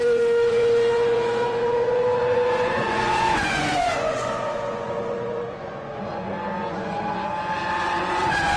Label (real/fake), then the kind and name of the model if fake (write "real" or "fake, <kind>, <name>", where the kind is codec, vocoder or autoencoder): fake, vocoder, Vocos